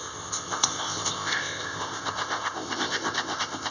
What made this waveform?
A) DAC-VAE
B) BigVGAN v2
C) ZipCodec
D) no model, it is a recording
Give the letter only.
C